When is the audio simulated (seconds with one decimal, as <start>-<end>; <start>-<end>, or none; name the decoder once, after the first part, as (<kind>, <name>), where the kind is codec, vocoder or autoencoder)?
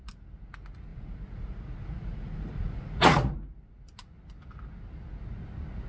0.9-3.3 (vocoder, Vocos)